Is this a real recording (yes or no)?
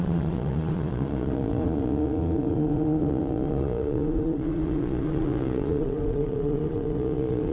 no